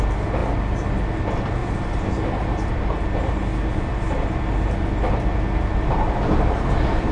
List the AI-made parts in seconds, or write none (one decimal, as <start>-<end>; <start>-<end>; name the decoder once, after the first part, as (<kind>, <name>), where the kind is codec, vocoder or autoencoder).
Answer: none